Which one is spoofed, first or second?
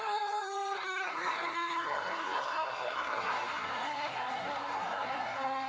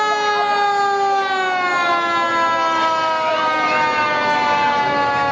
first